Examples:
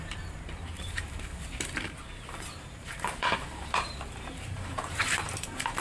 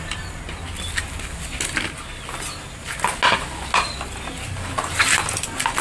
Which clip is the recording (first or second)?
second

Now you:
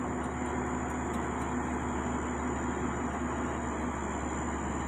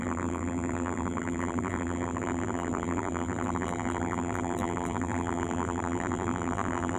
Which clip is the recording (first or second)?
first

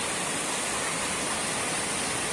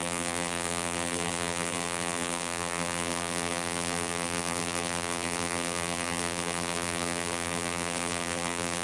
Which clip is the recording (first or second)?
first